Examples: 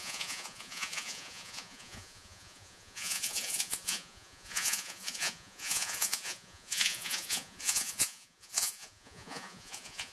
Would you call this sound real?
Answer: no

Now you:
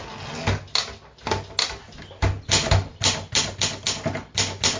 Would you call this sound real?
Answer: yes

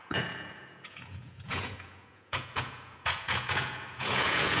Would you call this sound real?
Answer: no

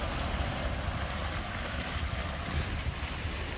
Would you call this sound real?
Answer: yes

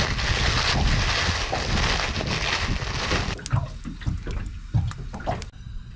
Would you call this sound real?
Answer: yes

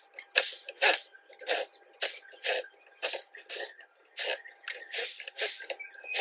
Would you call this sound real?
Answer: yes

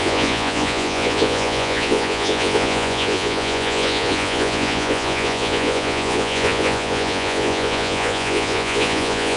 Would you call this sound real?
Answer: no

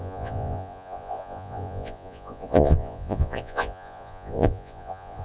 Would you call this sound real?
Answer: no